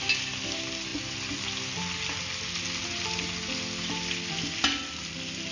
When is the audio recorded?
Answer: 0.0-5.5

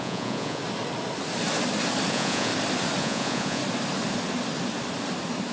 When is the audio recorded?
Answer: 0.6-2.1; 2.5-3.0; 3.6-5.5

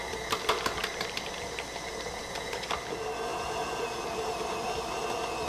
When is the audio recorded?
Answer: 0.0-5.5

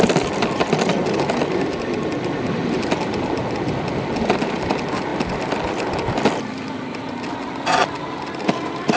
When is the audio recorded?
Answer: 0.0-9.0

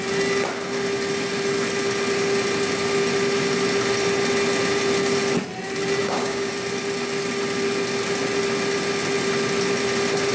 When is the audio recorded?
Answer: 0.0-6.0; 6.5-10.3

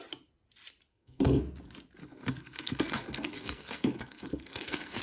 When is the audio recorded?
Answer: 0.0-0.9; 1.4-2.0